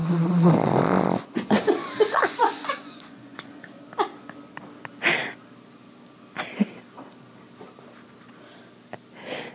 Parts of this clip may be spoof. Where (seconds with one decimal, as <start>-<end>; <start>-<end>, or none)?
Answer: 0.0-3.6